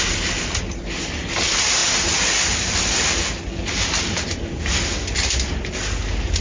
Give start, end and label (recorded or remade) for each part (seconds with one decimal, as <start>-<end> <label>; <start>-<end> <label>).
0.0-6.4 recorded

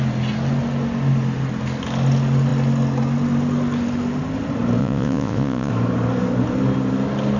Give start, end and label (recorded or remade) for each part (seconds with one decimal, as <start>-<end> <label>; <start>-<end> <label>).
0.0-4.8 recorded; 4.8-5.7 remade; 5.7-7.4 recorded

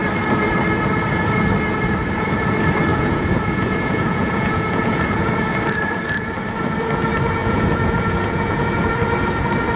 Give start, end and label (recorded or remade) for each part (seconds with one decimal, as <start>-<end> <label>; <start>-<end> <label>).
0.0-2.9 recorded; 2.9-5.3 remade; 5.3-7.4 recorded; 7.4-8.9 remade; 8.9-9.8 recorded

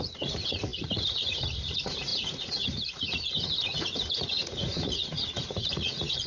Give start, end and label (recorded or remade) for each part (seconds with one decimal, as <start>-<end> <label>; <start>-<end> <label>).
0.0-6.3 remade